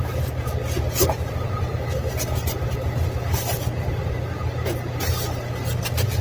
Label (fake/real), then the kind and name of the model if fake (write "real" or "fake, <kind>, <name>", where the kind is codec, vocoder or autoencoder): real